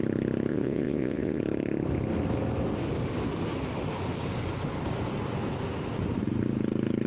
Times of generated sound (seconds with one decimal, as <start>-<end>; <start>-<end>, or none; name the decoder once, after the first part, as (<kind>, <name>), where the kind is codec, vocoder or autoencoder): 0.5-1.4 (vocoder, Vocos)

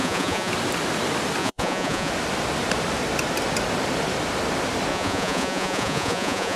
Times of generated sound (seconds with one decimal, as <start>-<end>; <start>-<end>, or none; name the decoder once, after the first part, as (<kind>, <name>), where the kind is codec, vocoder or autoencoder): 0.0-0.5 (vocoder, Vocos); 1.4-2.1; 4.9-6.6

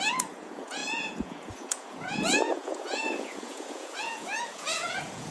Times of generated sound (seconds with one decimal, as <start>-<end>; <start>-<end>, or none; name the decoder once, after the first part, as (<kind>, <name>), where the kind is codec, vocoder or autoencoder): 0.0-5.3 (vocoder, Vocos)

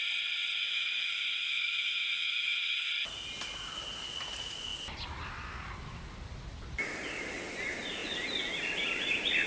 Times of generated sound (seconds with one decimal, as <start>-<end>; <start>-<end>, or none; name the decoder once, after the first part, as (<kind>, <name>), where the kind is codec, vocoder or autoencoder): 0.6-2.9 (autoencoder, DAC-VAE)

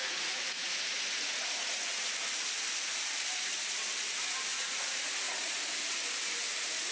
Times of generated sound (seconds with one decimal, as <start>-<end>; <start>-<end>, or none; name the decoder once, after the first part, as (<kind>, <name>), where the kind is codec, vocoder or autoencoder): 0.0-2.1 (vocoder, Vocos); 4.5-5.7